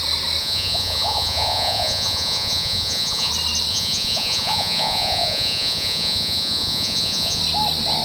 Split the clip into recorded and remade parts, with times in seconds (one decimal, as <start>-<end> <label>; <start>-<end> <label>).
0.0-0.4 recorded; 0.4-3.3 remade; 3.3-3.7 recorded; 3.7-7.4 remade; 7.4-8.0 recorded